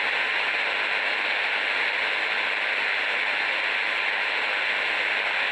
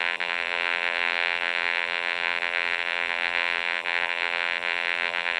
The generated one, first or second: second